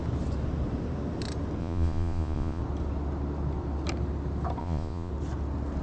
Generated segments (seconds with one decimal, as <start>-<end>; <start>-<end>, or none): 1.6-2.6; 4.6-5.1